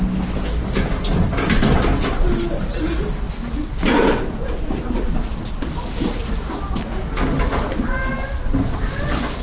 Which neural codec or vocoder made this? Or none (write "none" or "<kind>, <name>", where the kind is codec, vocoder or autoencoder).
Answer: none